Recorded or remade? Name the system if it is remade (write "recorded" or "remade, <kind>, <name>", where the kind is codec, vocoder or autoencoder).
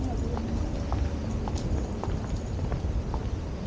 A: recorded